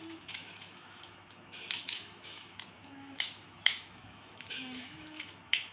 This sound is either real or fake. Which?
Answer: fake